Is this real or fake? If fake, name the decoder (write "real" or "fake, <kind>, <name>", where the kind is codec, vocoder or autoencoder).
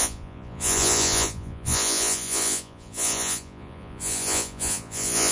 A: fake, vocoder, Vocos